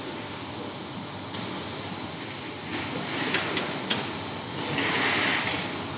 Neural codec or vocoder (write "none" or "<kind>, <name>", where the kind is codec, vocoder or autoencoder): none